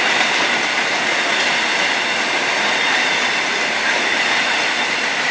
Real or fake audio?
real